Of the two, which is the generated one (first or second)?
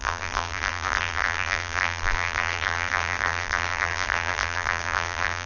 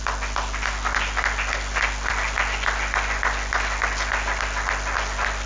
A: first